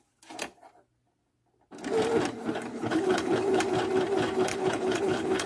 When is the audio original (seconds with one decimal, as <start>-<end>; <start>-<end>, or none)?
0.0-2.7; 3.6-4.5